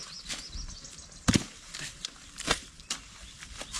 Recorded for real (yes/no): no